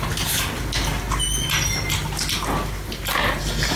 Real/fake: real